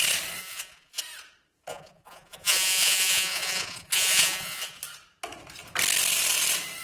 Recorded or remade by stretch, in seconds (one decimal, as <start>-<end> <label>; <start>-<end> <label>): 0.0-0.4 recorded; 0.4-1.0 remade; 1.0-1.7 recorded; 1.7-4.8 remade; 4.8-6.8 recorded